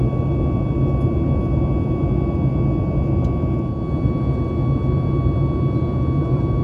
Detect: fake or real real